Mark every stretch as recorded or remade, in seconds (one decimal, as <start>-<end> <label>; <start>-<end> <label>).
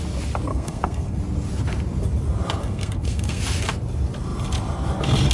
0.0-0.5 recorded; 0.5-1.2 remade; 1.2-2.6 recorded; 2.6-3.4 remade; 3.4-5.3 recorded